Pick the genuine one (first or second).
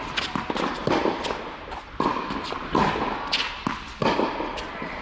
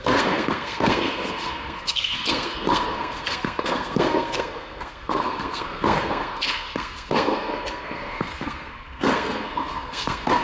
first